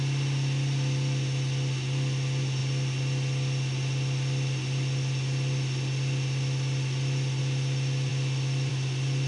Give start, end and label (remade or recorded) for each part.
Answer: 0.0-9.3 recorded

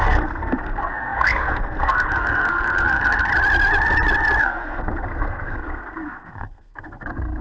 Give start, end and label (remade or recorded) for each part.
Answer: 0.0-3.3 remade; 3.3-4.4 recorded; 4.4-7.4 remade

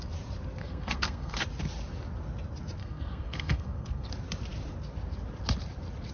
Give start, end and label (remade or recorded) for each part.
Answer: 0.0-0.6 recorded; 0.6-1.4 remade; 1.4-2.8 recorded; 2.8-4.1 remade; 4.1-6.1 recorded